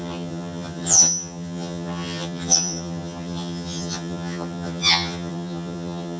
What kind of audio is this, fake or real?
fake